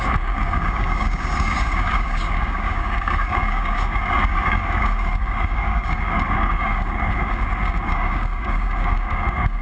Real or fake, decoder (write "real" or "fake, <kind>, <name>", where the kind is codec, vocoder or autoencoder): fake, codec, DAC